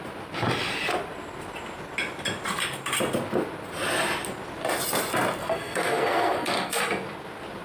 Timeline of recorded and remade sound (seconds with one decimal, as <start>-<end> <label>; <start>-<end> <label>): 0.0-5.4 recorded; 5.4-6.8 remade; 6.8-7.6 recorded